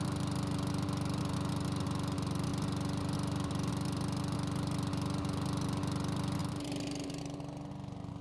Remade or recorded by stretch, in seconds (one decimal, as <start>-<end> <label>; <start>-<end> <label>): 0.0-8.2 recorded